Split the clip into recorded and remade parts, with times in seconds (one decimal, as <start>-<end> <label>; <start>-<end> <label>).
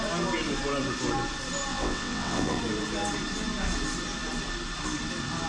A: 0.0-1.7 recorded; 1.7-2.6 remade; 2.6-5.5 recorded